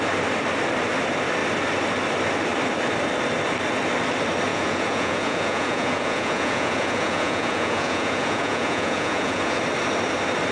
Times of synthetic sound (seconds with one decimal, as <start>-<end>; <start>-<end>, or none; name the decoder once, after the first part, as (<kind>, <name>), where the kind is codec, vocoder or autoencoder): 4.5-9.6 (vocoder, Vocos)